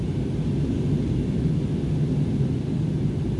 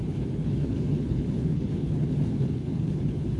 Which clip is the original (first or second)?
first